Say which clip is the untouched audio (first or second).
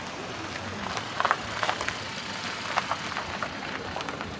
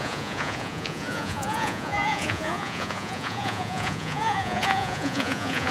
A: first